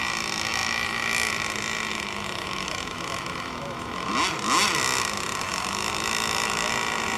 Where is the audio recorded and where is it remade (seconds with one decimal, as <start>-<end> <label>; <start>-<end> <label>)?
0.0-1.9 recorded; 1.9-4.1 remade; 4.1-5.5 recorded; 5.5-6.7 remade; 6.7-7.2 recorded